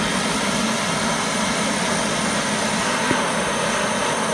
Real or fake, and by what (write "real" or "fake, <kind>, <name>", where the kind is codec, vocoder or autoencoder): real